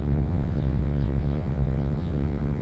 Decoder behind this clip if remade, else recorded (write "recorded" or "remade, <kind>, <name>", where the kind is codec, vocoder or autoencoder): remade, vocoder, WaveNeXt